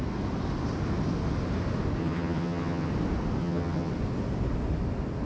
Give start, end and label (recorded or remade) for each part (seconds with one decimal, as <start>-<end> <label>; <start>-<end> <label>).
0.0-2.0 recorded; 2.0-2.9 remade; 2.9-3.4 recorded; 3.4-3.9 remade; 3.9-5.3 recorded